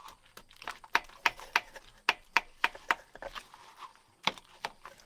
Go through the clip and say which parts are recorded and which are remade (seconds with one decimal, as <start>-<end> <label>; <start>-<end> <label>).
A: 0.0-5.1 recorded

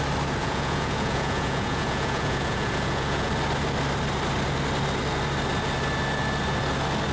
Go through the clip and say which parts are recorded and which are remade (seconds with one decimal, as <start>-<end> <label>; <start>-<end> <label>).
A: 0.0-0.4 recorded; 0.4-3.3 remade; 3.3-7.1 recorded

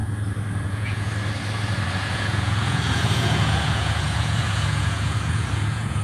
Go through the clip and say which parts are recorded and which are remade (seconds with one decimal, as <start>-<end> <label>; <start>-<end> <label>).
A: 0.0-0.7 recorded; 0.7-1.1 remade; 1.1-1.9 recorded; 1.9-6.0 remade

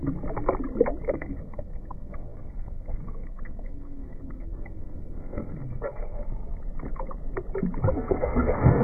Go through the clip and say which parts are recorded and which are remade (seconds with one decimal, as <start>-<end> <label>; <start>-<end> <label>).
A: 0.0-1.1 recorded; 1.1-6.2 remade; 6.2-7.9 recorded; 7.9-8.8 remade

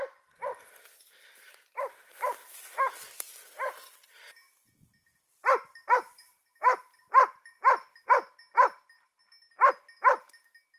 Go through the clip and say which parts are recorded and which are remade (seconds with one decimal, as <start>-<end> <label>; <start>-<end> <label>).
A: 0.0-0.9 recorded; 0.9-1.9 remade; 1.9-5.3 recorded; 5.3-8.1 remade; 8.1-10.8 recorded

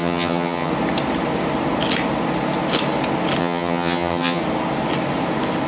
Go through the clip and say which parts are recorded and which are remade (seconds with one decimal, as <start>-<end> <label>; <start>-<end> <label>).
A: 0.0-0.7 remade; 0.7-3.4 recorded; 3.4-4.4 remade; 4.4-5.7 recorded

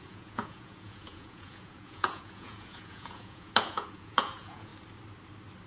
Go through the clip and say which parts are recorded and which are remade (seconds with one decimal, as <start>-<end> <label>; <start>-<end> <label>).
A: 0.0-4.7 remade; 4.7-5.7 recorded

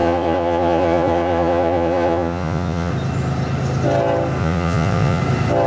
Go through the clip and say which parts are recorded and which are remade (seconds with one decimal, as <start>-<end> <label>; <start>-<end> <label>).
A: 0.0-2.9 remade; 2.9-4.4 recorded; 4.4-5.2 remade; 5.2-5.7 recorded